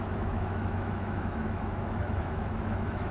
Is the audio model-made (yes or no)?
yes